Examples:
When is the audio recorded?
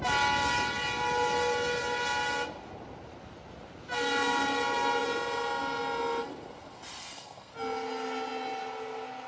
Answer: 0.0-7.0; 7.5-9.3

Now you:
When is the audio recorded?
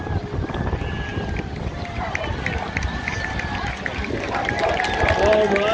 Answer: 0.0-5.7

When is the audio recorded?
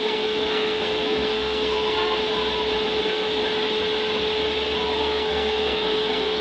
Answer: 2.2-3.0; 3.4-5.0